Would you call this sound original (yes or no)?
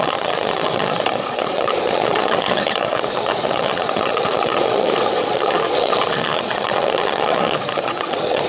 no